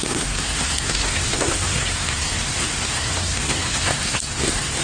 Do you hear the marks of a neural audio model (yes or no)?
yes